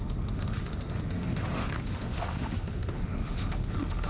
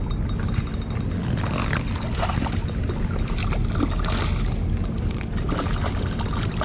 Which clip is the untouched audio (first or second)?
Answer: second